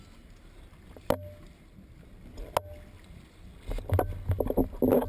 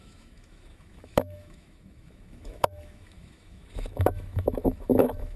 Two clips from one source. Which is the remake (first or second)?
second